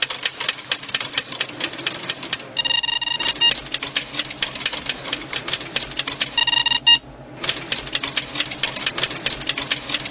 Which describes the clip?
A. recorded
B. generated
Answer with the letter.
A